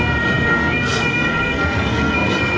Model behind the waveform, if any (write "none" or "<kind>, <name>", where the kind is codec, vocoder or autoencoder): codec, SNAC